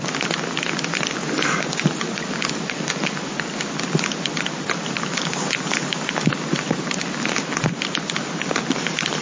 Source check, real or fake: real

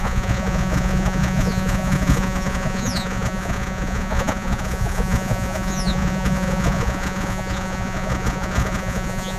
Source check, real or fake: fake